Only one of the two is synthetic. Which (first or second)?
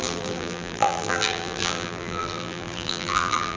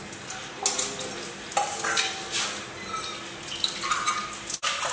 first